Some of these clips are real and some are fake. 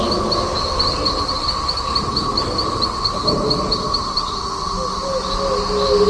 real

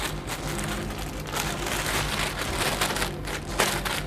real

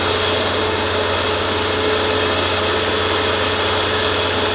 real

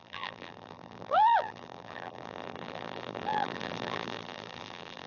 fake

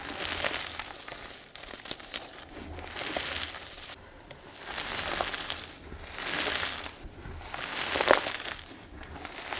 real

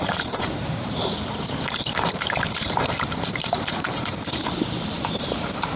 fake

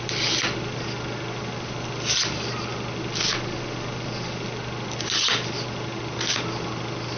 real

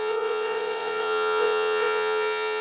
fake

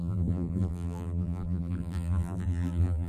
fake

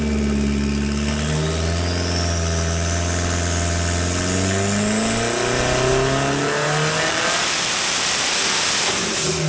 real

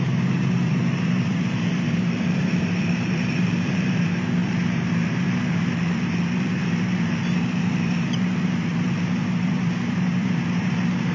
fake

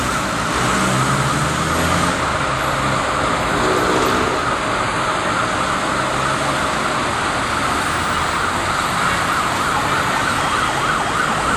real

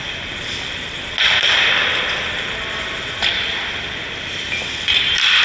real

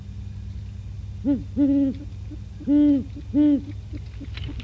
real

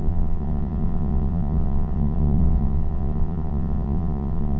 fake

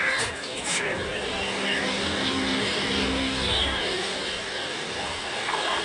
fake